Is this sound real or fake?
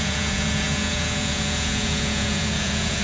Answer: fake